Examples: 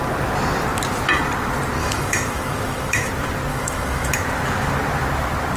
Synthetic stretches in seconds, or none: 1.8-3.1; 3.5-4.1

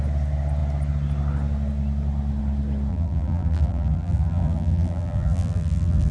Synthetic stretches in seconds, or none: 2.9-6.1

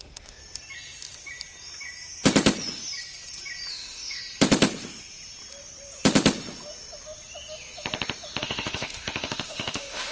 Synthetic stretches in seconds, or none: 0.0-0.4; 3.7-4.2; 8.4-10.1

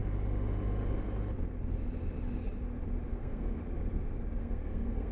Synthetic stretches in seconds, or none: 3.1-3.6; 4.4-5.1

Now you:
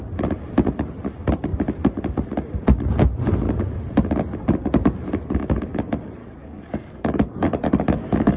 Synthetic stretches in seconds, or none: 6.2-8.4

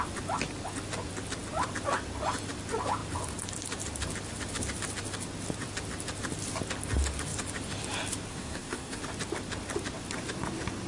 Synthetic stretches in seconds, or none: 8.3-9.0

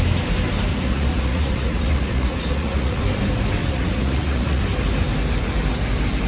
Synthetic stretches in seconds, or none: 0.7-3.0; 3.6-4.6